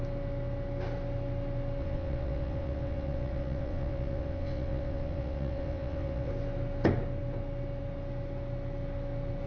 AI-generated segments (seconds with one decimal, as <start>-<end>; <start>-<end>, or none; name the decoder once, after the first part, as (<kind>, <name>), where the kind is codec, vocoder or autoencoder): 1.8-6.3 (vocoder, WaveNeXt)